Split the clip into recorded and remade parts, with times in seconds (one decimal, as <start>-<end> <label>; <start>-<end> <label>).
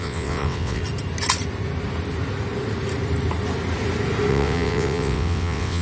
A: 0.0-0.8 remade; 0.8-4.3 recorded; 4.3-5.8 remade